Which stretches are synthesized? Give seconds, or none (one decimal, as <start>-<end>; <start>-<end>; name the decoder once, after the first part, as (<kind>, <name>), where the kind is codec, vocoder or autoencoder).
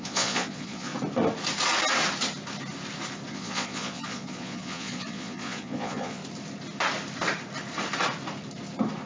0.0-0.9 (vocoder, Vocos); 3.3-6.2